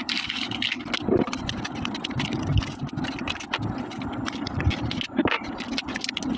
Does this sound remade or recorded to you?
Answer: recorded